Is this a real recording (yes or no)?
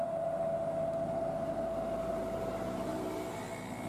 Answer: yes